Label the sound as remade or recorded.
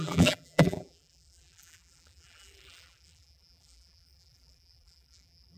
remade